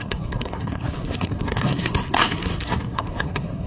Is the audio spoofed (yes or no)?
yes